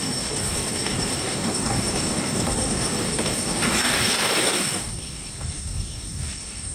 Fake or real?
fake